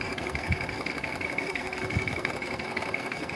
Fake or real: fake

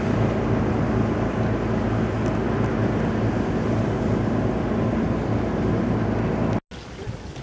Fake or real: real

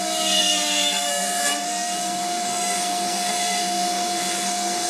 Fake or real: fake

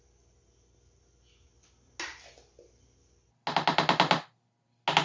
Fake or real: real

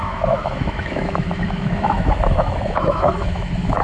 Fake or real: fake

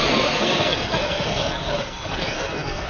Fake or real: fake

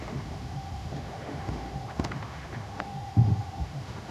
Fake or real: fake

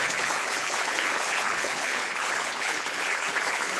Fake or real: fake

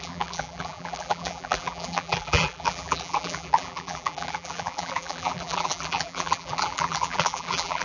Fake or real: fake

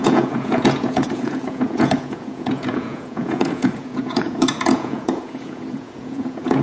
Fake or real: fake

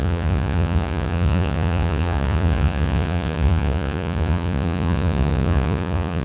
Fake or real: fake